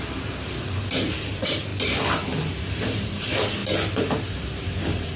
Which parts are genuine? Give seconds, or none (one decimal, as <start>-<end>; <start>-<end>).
1.7-2.6; 3.6-4.2

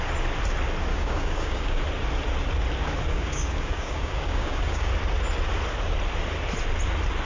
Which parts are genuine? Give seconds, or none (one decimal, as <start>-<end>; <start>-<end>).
0.0-0.9; 1.8-3.1; 4.9-7.3

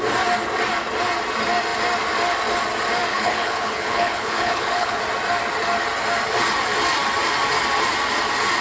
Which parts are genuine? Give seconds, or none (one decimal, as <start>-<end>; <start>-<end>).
0.0-3.1; 5.0-8.6

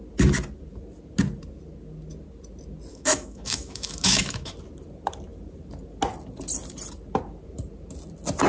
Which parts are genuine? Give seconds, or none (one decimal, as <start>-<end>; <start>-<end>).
0.0-2.9; 4.5-8.5

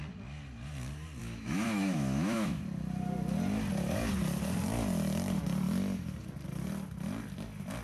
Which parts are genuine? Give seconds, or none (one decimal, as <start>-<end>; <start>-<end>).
0.0-1.2; 2.6-7.8

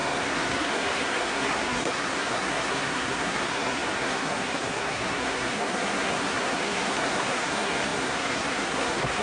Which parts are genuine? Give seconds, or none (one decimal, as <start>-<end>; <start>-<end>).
none